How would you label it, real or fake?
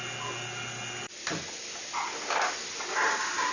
real